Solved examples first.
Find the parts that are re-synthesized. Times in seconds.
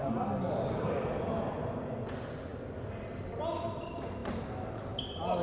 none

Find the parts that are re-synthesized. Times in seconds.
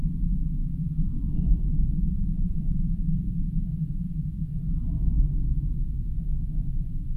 0.6-4.9 (vocoder, BigVGAN v2)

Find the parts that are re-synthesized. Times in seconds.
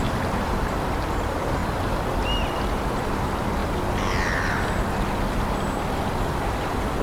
0.0-1.6 (vocoder, BigVGAN v2); 3.0-3.6; 6.5-7.0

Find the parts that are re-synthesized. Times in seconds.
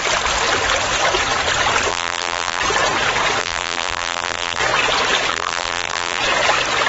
1.9-2.6 (vocoder, BigVGAN v2); 3.4-4.6; 5.3-6.2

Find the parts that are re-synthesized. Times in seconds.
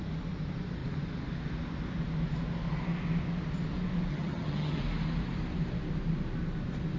4.1-4.8 (vocoder, HiFi-GAN)